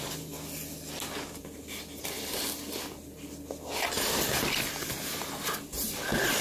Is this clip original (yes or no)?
yes